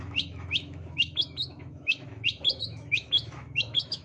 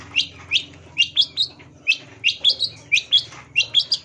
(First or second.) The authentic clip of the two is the second